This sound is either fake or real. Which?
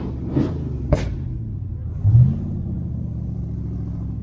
real